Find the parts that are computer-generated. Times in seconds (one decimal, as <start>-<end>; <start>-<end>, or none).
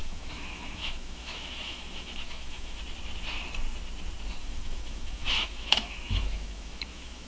0.0-2.8; 4.4-7.3